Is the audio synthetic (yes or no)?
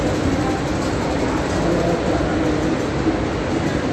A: no